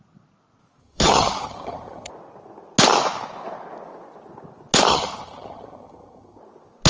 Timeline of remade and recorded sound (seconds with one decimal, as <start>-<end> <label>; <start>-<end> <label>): 0.0-0.8 recorded; 0.8-2.1 remade; 2.1-4.9 recorded; 4.9-6.4 remade; 6.4-6.9 recorded